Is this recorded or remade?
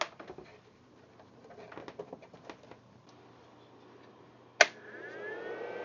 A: recorded